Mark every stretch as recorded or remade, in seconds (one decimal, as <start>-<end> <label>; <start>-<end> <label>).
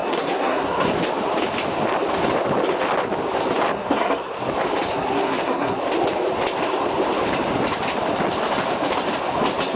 0.0-0.9 remade; 0.9-3.7 recorded; 3.7-4.4 remade; 4.4-4.9 recorded; 4.9-5.8 remade; 5.8-9.8 recorded